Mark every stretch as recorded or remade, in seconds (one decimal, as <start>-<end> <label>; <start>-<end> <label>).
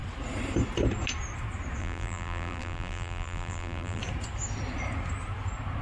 0.0-1.8 recorded; 1.8-4.0 remade; 4.0-5.8 recorded